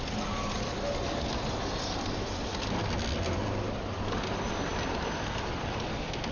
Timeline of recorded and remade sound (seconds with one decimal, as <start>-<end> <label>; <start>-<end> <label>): 0.0-6.3 recorded

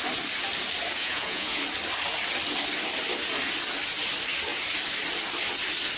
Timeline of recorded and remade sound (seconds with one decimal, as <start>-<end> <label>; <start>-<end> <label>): 0.0-1.0 recorded; 1.0-1.6 remade; 1.6-6.0 recorded

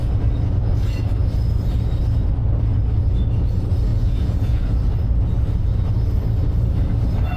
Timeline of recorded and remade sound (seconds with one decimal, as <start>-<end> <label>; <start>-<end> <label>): 0.0-3.9 recorded; 3.9-4.6 remade; 4.6-7.4 recorded

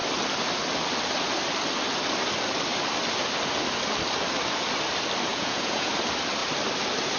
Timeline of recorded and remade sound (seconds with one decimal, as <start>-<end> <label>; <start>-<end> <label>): 0.0-5.3 recorded; 5.3-5.9 remade; 5.9-7.2 recorded

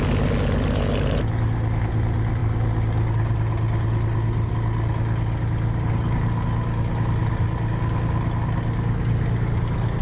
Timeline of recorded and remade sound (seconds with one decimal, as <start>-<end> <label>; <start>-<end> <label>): 0.0-10.0 recorded

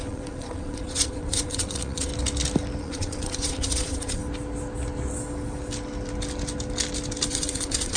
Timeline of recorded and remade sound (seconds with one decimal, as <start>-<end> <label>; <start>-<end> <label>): 0.0-2.1 remade; 2.1-2.8 recorded; 2.8-4.2 remade; 4.2-7.3 recorded; 7.3-8.0 remade

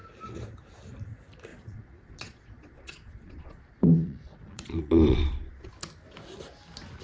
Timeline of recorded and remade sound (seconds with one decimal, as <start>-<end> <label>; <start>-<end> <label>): 0.0-1.5 recorded; 1.5-5.7 remade; 5.7-7.0 recorded